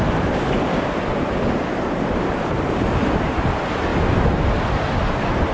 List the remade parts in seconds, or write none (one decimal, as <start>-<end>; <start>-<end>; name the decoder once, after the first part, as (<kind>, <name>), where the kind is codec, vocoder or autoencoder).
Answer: none